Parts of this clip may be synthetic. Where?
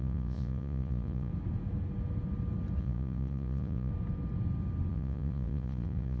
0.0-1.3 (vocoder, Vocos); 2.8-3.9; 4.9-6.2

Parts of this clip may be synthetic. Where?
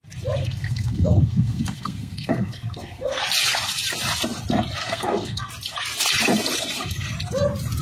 0.4-3.2 (codec, SNAC); 4.8-5.5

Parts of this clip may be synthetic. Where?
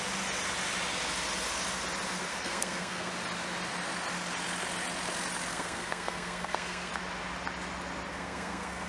2.3-3.1 (codec, SNAC); 5.5-6.9; 8.1-8.9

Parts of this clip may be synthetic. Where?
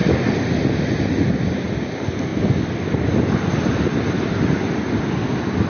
none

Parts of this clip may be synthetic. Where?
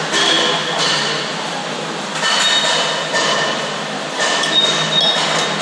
none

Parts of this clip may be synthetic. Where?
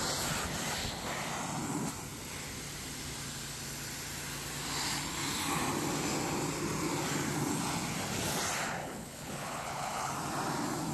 8.8-10.1 (codec, HILCodec)